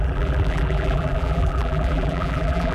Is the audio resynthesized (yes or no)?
yes